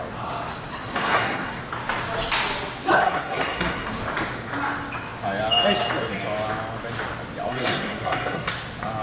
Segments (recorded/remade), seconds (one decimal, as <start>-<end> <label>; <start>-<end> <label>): 0.0-0.7 recorded; 0.7-1.6 remade; 1.6-2.9 recorded; 2.9-4.0 remade; 4.0-7.5 recorded; 7.5-8.5 remade; 8.5-9.0 recorded